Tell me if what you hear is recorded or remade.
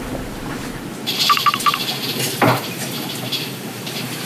remade